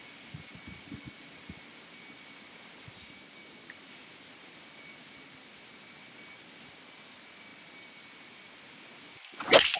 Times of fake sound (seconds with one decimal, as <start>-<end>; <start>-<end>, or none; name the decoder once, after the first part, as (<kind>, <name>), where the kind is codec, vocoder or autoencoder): none